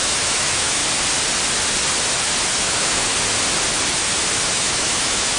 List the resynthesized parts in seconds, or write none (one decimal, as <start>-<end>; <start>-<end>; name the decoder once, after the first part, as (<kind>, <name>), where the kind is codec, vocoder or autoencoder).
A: 0.0-0.8 (autoencoder, DAC-VAE); 2.6-3.1; 4.5-5.4